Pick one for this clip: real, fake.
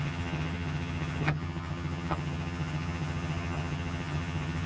fake